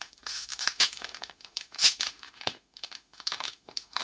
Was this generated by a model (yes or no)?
yes